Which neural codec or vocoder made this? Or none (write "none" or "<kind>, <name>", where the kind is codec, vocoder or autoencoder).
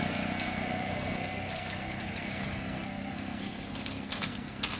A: codec, SNAC